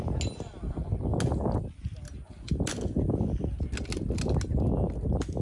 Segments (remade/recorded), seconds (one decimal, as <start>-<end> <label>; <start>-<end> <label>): 0.0-5.4 recorded